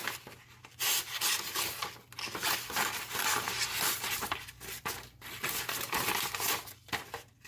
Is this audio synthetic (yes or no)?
no